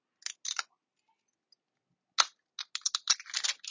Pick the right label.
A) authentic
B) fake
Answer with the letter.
A